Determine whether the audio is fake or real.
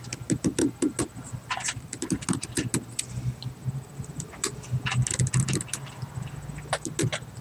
real